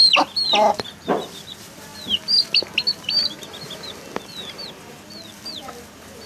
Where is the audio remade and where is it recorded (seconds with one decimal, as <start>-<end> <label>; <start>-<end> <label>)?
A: 0.0-6.3 recorded